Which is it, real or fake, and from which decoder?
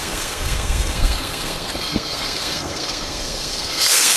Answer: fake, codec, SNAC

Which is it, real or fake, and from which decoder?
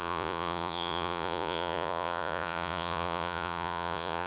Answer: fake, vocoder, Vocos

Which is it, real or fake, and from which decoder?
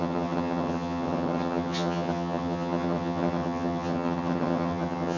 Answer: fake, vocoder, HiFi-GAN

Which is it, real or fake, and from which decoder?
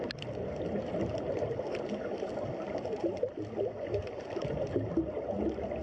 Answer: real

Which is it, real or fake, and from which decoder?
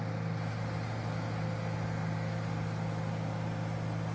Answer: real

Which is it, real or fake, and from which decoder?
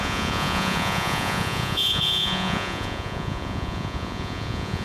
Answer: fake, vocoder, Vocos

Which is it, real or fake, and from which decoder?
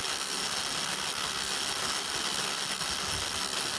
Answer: real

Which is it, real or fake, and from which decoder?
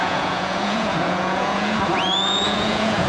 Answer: fake, vocoder, Vocos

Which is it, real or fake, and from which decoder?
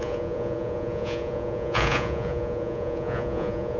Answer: fake, vocoder, Vocos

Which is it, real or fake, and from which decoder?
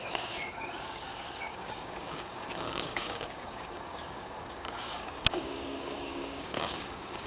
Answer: fake, codec, DAC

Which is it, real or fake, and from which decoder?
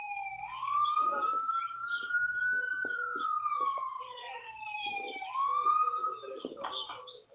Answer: fake, codec, DAC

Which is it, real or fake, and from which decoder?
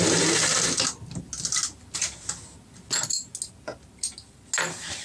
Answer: real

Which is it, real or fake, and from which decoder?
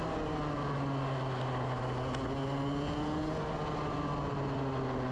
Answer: real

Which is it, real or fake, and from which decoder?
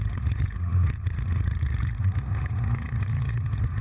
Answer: fake, vocoder, Vocos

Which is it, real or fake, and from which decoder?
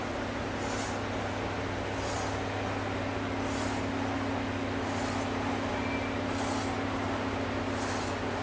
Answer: real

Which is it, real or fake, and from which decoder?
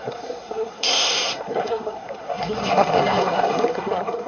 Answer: fake, codec, SNAC